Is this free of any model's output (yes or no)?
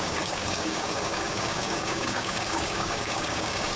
no